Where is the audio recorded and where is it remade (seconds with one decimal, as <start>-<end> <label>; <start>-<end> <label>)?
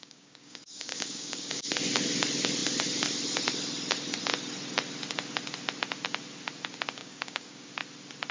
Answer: 0.0-1.7 remade; 1.7-7.0 recorded; 7.0-7.7 remade; 7.7-8.3 recorded